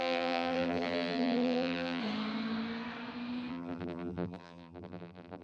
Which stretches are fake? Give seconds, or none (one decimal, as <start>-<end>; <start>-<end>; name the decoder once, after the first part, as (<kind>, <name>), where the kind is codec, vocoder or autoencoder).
0.0-2.0 (vocoder, BigVGAN v2); 3.5-5.4